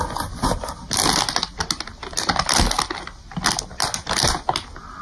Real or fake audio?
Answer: real